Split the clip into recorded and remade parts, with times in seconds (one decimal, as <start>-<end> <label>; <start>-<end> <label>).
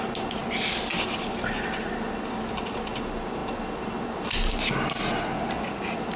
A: 0.0-6.2 recorded